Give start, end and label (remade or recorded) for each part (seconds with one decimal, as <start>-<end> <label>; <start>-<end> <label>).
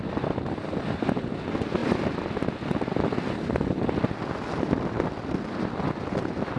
0.0-6.6 recorded